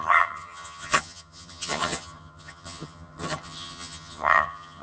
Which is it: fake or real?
fake